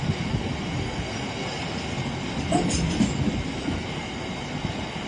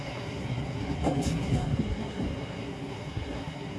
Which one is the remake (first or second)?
second